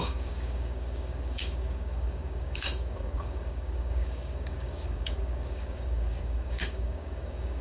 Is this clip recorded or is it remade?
remade